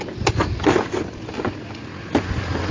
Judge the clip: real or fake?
real